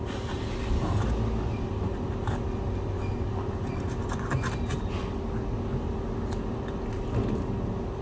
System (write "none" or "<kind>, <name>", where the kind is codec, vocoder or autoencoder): none